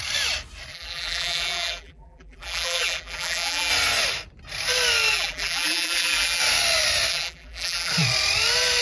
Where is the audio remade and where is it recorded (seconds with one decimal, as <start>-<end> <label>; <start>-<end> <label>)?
0.0-0.7 recorded; 0.7-3.7 remade; 3.7-5.1 recorded; 5.1-6.4 remade; 6.4-7.1 recorded; 7.1-7.9 remade; 7.9-8.8 recorded